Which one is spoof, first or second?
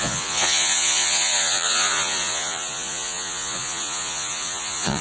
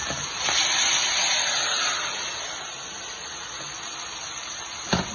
first